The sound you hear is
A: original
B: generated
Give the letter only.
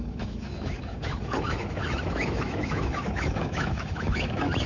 B